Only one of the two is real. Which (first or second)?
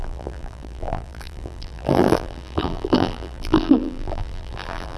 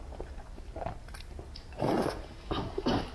second